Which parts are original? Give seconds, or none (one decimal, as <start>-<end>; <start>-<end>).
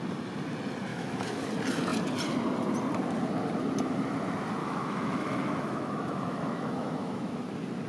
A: 0.0-0.9; 1.5-4.6; 7.3-7.9